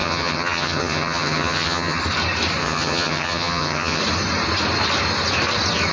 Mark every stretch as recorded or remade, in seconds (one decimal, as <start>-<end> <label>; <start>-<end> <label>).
0.0-2.0 remade; 2.0-2.6 recorded; 2.6-4.0 remade; 4.0-5.9 recorded